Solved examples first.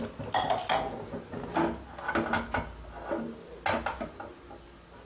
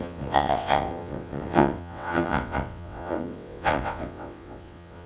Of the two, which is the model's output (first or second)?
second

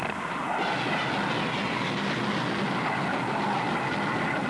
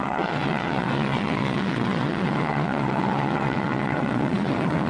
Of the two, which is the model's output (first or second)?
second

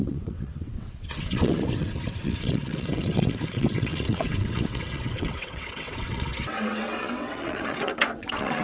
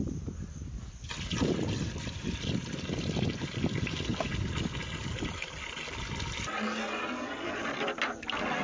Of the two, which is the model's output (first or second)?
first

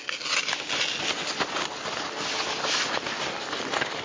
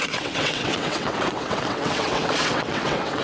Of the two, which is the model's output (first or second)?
second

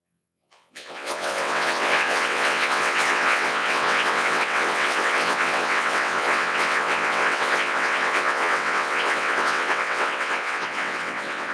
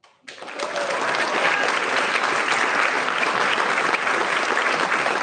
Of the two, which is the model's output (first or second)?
first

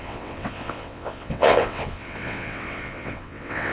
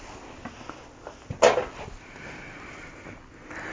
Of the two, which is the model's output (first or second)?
first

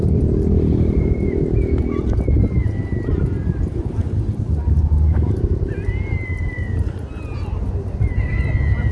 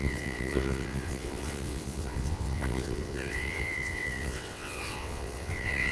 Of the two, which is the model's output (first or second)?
second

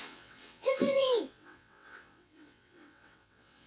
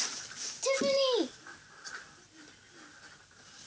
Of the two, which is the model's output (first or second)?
first